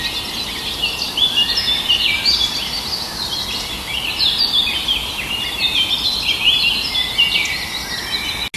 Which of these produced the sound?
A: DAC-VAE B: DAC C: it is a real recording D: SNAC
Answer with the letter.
C